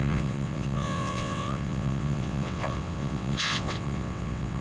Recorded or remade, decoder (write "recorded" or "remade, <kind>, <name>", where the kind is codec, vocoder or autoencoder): remade, vocoder, WaveNeXt